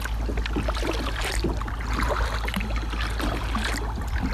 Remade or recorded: recorded